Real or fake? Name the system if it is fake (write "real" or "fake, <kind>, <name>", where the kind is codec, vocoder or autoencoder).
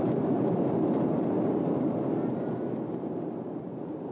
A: real